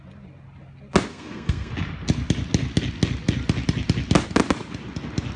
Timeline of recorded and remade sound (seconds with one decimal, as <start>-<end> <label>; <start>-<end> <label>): 0.0-1.1 recorded; 1.1-1.7 remade; 1.7-5.4 recorded